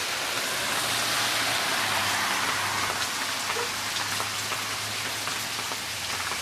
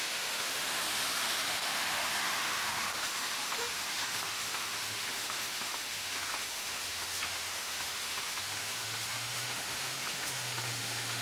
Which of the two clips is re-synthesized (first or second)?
second